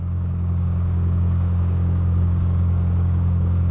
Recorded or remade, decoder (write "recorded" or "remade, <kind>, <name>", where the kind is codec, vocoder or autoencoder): remade, codec, DAC